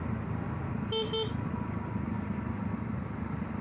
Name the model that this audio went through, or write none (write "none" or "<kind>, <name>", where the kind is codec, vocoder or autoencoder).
none